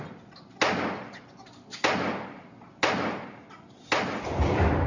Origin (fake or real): real